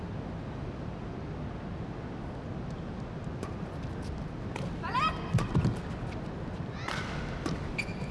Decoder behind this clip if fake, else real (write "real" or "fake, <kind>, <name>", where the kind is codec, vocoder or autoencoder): real